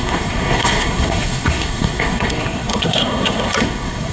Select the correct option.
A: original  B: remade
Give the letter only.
B